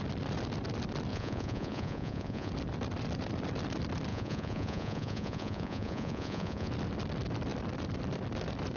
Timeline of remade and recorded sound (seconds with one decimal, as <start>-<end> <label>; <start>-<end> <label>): 0.0-1.1 recorded; 1.1-2.5 remade; 2.5-4.1 recorded; 4.1-6.7 remade; 6.7-8.8 recorded